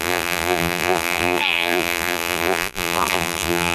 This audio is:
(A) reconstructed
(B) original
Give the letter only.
A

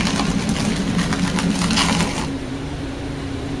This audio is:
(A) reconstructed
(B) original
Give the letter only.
B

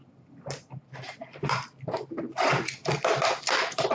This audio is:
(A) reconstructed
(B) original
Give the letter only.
B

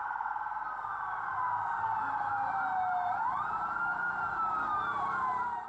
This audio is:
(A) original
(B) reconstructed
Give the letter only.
A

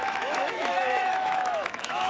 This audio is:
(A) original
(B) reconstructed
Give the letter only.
B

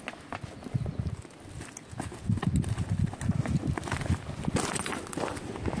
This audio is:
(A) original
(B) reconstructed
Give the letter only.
A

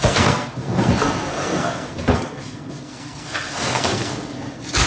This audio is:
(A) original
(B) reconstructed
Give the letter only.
B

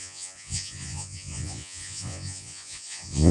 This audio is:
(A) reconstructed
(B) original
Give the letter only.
A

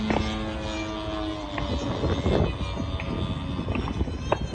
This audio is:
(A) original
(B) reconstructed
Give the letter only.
A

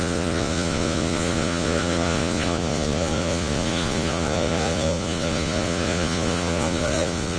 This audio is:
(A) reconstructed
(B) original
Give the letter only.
A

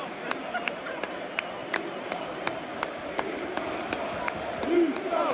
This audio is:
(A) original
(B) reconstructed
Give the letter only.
A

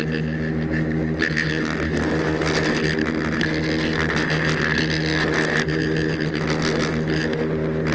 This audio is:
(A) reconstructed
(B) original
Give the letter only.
B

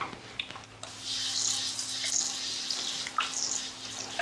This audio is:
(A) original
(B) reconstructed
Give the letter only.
A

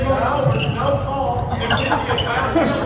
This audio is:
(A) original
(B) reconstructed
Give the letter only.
A